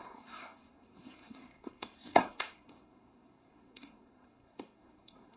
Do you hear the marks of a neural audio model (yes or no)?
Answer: yes